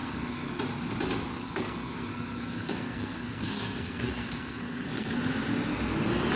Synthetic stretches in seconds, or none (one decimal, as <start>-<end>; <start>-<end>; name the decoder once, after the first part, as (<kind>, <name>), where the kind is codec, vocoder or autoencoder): 0.0-0.6 (codec, SNAC); 1.4-5.2